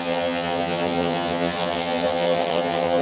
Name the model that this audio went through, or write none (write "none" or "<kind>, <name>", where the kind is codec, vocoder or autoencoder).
vocoder, HiFi-GAN